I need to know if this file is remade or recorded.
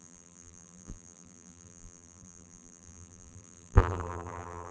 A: remade